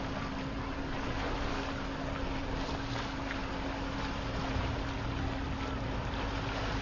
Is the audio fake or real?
real